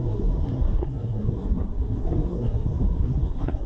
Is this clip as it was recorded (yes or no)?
no